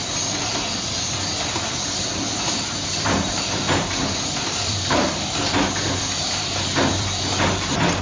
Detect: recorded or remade remade